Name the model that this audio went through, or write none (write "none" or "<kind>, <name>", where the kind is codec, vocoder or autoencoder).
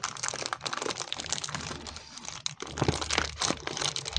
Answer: none